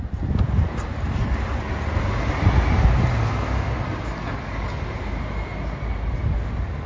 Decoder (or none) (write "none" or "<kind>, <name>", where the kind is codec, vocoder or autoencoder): none